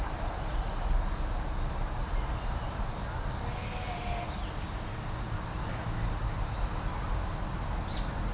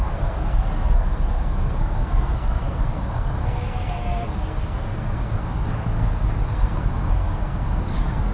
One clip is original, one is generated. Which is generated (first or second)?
second